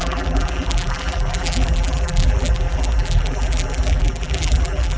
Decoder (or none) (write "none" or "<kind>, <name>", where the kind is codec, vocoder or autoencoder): vocoder, BigVGAN v2